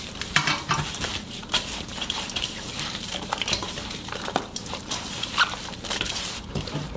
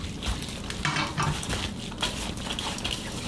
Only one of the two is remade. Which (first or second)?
first